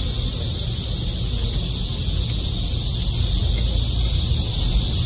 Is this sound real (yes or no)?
yes